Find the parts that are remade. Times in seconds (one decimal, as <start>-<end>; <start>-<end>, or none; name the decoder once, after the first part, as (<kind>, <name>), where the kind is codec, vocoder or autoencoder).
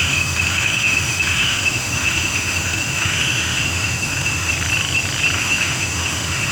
0.0-4.5 (autoencoder, DAC-VAE); 5.4-6.5